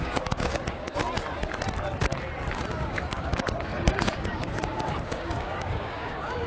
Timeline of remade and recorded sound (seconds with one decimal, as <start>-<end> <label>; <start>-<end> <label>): 0.0-1.0 remade; 1.0-2.7 recorded; 2.7-6.5 remade